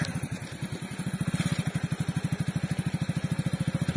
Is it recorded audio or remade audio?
recorded